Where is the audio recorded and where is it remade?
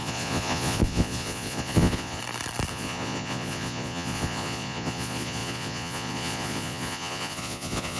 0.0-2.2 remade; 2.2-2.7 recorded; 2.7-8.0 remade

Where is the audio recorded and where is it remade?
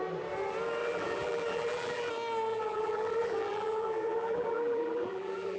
0.0-0.8 recorded; 0.8-2.1 remade; 2.1-2.5 recorded; 2.5-5.6 remade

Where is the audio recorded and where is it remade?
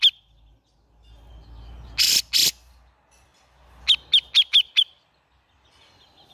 0.0-6.3 recorded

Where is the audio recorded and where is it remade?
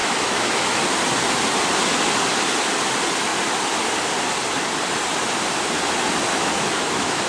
0.0-0.8 remade; 0.8-6.3 recorded; 6.3-7.3 remade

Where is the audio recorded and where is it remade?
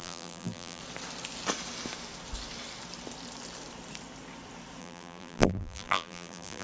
0.0-0.8 remade; 0.8-4.8 recorded; 4.8-6.6 remade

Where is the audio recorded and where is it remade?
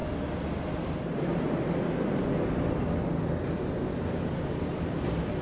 0.0-1.3 recorded; 1.3-2.2 remade; 2.2-5.4 recorded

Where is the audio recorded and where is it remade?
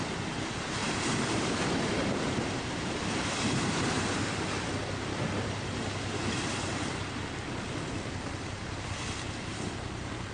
0.0-0.8 recorded; 0.8-4.7 remade; 4.7-10.3 recorded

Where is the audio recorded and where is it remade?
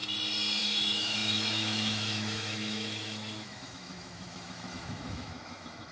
0.0-0.6 recorded; 0.6-5.9 remade